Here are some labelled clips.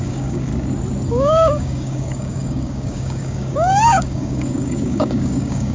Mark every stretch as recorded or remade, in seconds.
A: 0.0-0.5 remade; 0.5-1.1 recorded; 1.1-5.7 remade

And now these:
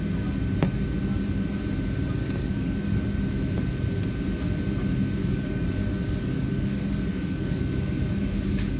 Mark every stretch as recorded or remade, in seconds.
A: 0.0-2.2 recorded; 2.2-3.0 remade; 3.0-5.2 recorded; 5.2-8.8 remade

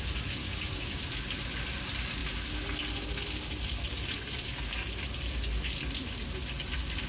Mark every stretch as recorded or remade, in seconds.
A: 0.0-0.4 recorded; 0.4-1.0 remade; 1.0-7.1 recorded

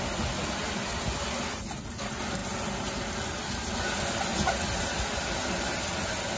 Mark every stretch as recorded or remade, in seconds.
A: 0.0-6.4 recorded